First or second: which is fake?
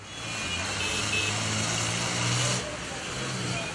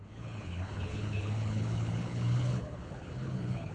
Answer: second